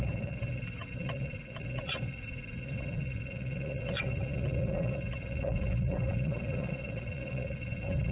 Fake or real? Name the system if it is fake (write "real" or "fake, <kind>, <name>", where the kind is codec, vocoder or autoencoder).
fake, vocoder, Vocos